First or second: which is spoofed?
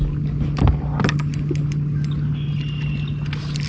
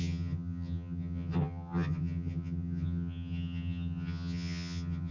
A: second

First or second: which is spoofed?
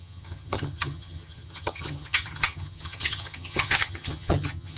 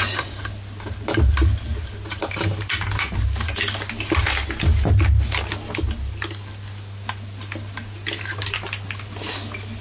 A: first